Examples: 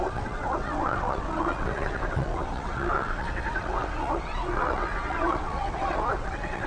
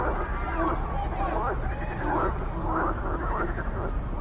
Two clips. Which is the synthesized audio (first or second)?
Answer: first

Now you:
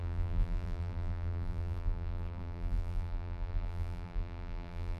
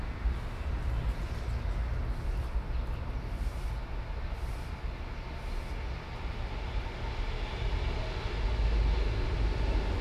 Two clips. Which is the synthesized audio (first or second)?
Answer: first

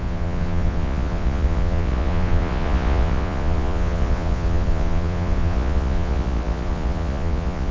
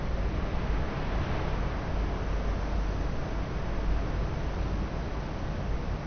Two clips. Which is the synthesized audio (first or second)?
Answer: first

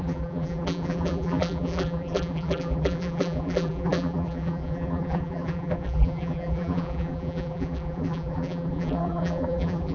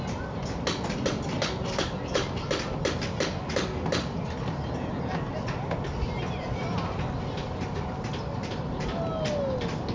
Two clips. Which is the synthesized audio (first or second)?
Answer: first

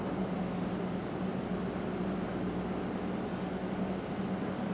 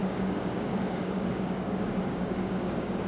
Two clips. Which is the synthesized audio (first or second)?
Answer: second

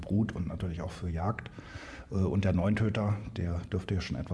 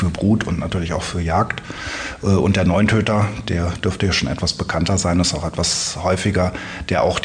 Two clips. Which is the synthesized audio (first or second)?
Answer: first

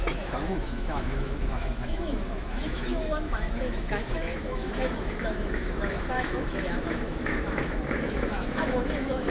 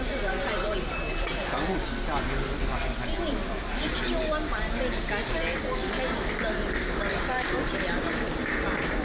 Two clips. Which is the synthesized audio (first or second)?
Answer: first